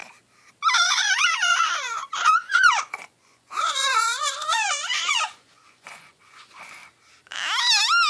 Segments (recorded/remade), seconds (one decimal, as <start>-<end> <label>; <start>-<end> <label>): 0.0-0.8 recorded; 0.8-6.8 remade; 6.8-8.1 recorded